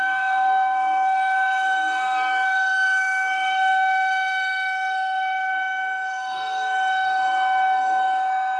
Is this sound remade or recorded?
remade